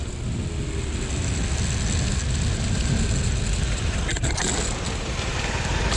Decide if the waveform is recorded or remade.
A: recorded